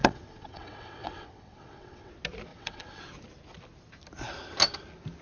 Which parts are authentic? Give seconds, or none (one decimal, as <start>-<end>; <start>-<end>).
2.1-2.5; 3.0-5.2